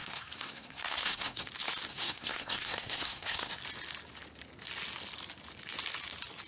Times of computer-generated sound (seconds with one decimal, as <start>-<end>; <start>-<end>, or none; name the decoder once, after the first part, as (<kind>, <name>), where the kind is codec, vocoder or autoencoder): 0.0-1.5 (codec, SNAC); 1.9-3.5